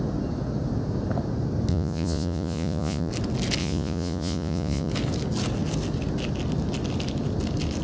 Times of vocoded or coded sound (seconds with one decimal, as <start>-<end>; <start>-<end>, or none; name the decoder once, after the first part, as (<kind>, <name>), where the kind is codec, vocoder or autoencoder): 1.7-3.1 (vocoder, Vocos); 3.6-4.9